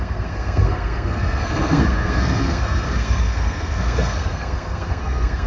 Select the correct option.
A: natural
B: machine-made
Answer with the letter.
B